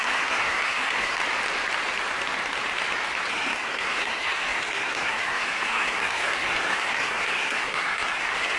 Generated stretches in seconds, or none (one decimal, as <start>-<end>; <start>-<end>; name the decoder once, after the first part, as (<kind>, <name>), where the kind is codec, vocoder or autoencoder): 0.0-1.2 (codec, SNAC); 3.3-8.6